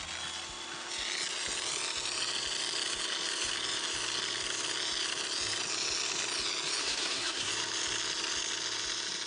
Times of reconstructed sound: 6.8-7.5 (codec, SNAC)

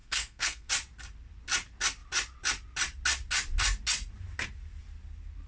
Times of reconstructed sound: 0.0-0.7 (codec, SNAC)

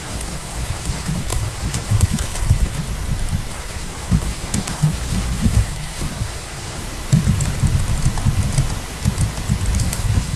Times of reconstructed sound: 0.0-2.8 (codec, SNAC); 3.5-6.8; 9.8-10.4

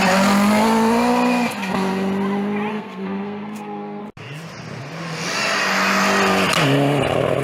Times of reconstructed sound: 2.7-4.0 (codec, SNAC)

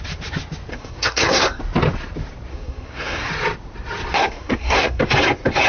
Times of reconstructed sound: 0.7-1.6 (codec, SNAC); 2.5-3.3; 4.2-5.0

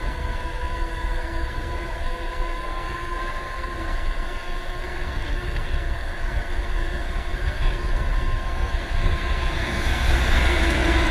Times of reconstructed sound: 0.0-11.1 (codec, SNAC)

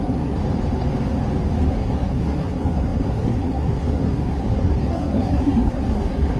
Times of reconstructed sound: 0.0-0.4 (codec, SNAC); 1.7-6.4

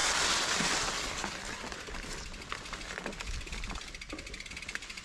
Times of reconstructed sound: none